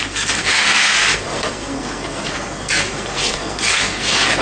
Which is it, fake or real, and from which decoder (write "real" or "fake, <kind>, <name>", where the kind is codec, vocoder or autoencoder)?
fake, codec, SNAC